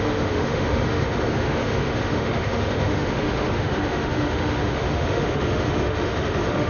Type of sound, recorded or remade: remade